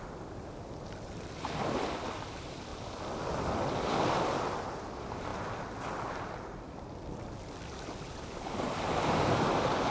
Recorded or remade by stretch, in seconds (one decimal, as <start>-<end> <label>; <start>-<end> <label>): 0.0-9.9 recorded